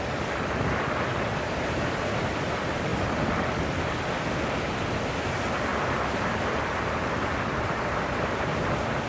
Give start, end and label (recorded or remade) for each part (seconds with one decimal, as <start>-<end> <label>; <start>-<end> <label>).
0.0-1.1 recorded; 1.1-1.8 remade; 1.8-5.7 recorded; 5.7-8.5 remade; 8.5-9.1 recorded